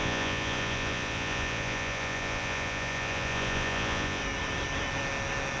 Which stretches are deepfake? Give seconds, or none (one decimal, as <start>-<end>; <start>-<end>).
0.0-4.2